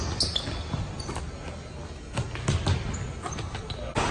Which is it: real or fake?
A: real